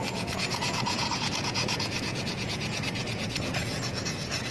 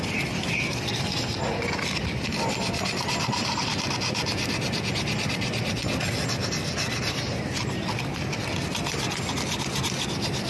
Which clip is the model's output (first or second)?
first